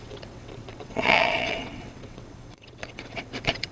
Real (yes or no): no